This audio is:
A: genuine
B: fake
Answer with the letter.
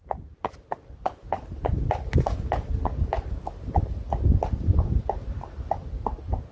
A